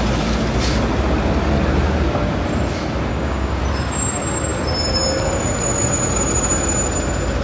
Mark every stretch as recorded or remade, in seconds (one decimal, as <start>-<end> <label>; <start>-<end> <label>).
0.0-3.1 recorded; 3.1-3.6 remade; 3.6-7.4 recorded